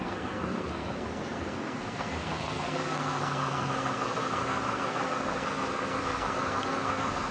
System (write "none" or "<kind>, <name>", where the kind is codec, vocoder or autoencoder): codec, SNAC